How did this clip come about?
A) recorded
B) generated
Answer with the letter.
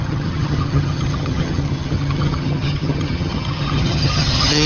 B